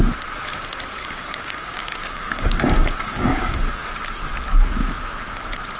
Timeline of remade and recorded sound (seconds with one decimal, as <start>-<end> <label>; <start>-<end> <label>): 0.0-1.0 recorded; 1.0-3.9 remade; 3.9-5.8 recorded